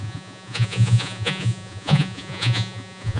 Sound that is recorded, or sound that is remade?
remade